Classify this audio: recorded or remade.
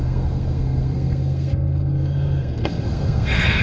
remade